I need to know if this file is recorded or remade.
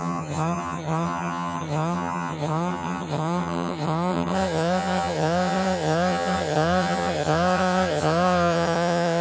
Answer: remade